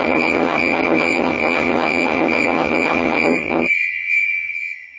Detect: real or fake fake